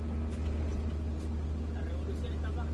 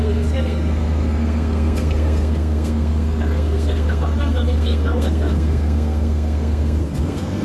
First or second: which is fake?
second